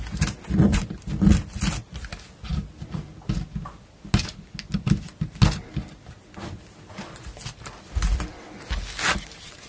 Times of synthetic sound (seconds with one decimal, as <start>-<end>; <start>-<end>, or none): none

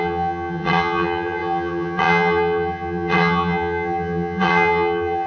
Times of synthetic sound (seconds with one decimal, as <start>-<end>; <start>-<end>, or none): 0.0-5.3

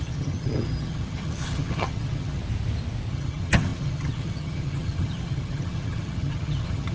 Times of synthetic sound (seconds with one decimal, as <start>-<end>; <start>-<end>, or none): 0.0-2.4; 3.1-6.9

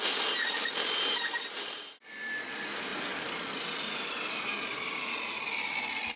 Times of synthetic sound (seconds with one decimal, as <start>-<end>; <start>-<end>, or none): none